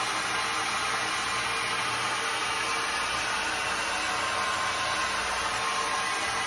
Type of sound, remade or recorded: recorded